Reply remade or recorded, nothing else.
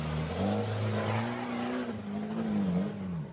recorded